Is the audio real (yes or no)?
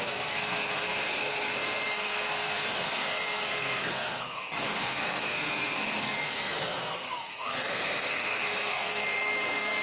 no